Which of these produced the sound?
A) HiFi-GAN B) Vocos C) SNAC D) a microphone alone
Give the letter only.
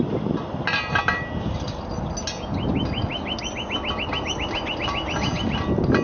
D